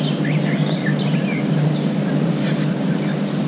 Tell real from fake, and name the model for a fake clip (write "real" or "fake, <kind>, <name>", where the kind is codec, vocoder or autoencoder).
real